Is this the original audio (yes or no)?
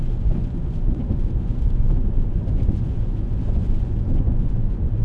no